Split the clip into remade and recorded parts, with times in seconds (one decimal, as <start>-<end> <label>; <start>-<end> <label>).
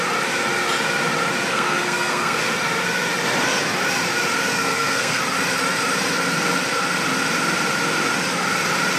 0.0-1.5 recorded; 1.5-2.4 remade; 2.4-4.5 recorded; 4.5-5.2 remade; 5.2-9.0 recorded